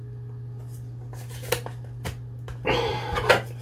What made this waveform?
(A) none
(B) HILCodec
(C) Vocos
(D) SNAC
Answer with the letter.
A